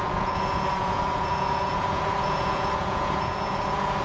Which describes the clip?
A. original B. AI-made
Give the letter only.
B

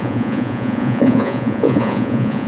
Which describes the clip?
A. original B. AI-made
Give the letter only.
B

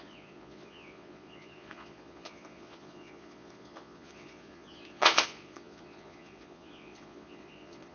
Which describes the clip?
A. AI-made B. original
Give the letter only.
A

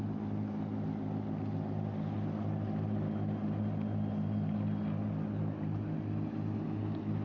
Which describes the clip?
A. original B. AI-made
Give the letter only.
A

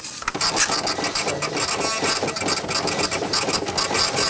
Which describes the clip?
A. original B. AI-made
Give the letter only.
A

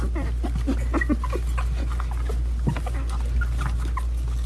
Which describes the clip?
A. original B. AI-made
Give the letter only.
A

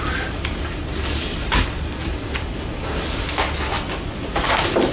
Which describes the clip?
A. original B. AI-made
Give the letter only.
A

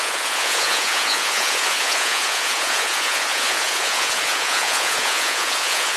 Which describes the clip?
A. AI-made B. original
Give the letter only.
A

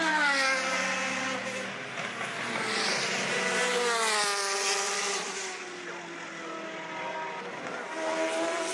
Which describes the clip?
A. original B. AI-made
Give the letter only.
A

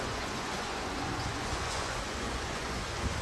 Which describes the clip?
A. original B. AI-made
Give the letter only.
B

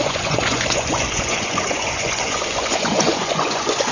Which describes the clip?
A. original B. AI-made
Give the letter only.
B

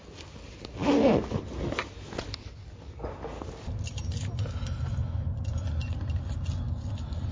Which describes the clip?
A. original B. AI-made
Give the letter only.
A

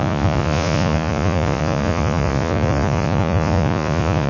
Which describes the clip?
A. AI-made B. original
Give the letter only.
A